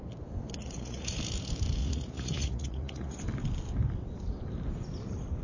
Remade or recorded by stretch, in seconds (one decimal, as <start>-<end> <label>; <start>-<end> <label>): 0.0-0.6 recorded; 0.6-1.2 remade; 1.2-1.8 recorded; 1.8-3.2 remade; 3.2-5.4 recorded